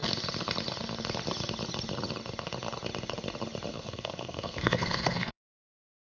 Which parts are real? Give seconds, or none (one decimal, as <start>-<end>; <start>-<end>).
0.0-3.7